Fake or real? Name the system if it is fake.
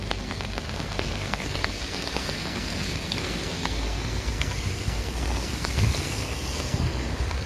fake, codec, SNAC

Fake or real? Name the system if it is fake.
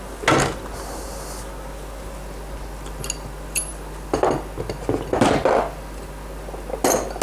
real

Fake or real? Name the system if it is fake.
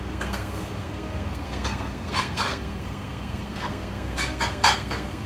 fake, codec, SNAC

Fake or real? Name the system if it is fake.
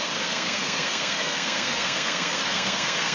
fake, codec, SNAC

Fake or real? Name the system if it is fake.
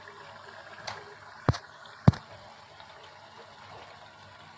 real